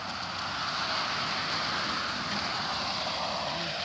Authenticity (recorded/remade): recorded